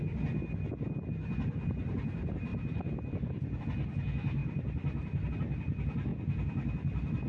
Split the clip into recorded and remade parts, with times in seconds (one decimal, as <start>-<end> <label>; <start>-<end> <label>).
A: 0.0-2.5 recorded; 2.5-3.6 remade; 3.6-4.4 recorded; 4.4-5.3 remade; 5.3-7.3 recorded